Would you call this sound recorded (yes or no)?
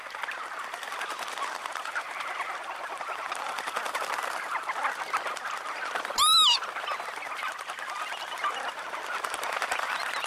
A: yes